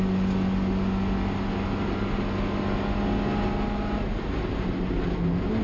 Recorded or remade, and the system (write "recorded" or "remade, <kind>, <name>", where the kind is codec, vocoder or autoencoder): recorded